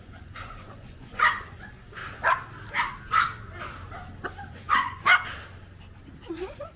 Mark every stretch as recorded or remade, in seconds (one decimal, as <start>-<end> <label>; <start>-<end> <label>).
0.0-2.0 remade; 2.0-4.5 recorded; 4.5-5.1 remade; 5.1-6.3 recorded; 6.3-6.8 remade